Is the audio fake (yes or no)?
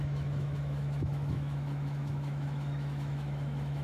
yes